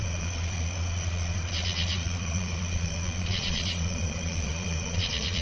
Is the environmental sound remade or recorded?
remade